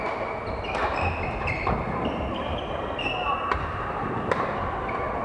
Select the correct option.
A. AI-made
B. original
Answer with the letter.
B